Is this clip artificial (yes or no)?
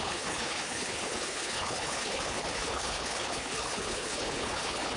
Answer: yes